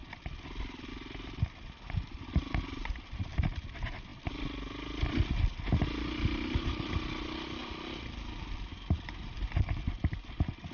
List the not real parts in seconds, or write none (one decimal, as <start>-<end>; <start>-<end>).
none